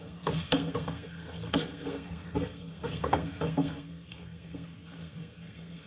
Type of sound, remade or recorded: remade